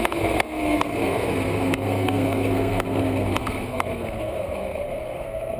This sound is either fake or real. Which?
fake